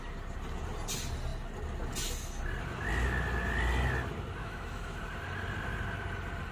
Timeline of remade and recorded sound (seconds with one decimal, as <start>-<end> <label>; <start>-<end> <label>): 0.0-4.4 recorded; 4.4-5.0 remade; 5.0-6.5 recorded